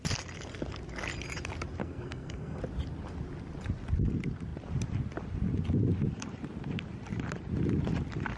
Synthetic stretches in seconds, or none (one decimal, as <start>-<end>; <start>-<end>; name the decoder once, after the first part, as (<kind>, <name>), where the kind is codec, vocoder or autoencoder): 1.8-2.6 (codec, SNAC)

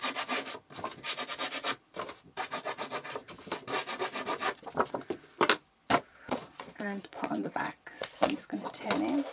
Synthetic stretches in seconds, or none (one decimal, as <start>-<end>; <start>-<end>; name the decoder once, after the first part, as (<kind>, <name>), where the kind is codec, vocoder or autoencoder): 6.1-8.9 (vocoder, Vocos)

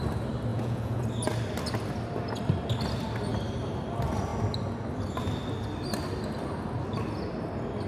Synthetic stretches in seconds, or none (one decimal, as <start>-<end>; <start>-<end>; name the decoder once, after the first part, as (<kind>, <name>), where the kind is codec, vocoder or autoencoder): 0.5-1.0 (vocoder, Vocos)